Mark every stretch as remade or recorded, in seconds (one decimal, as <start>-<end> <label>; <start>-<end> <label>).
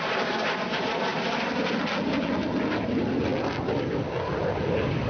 0.0-5.1 recorded